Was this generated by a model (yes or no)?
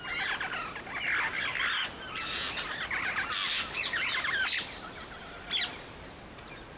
no